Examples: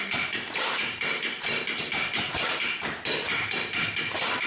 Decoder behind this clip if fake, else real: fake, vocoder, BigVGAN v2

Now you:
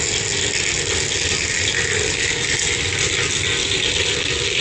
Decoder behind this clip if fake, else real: real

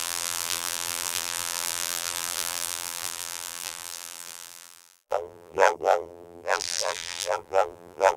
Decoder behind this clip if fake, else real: fake, vocoder, BigVGAN v2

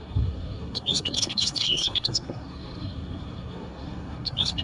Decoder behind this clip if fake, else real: fake, codec, SNAC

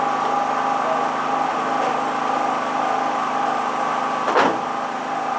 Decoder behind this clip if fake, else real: real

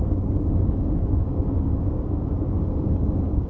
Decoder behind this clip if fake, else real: fake, codec, DAC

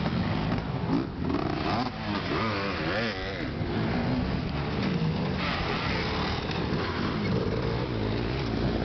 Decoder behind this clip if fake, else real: real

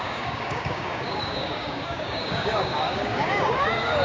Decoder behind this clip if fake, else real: fake, codec, DAC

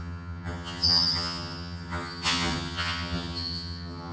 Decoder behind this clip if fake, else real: fake, vocoder, HiFi-GAN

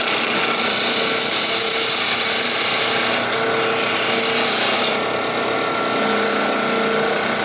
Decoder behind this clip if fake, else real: real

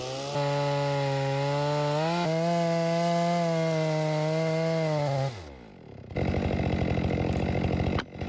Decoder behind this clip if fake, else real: real